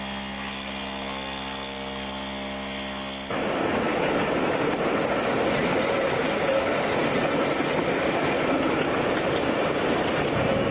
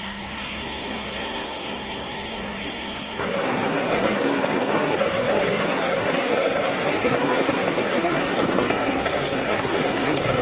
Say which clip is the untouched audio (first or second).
first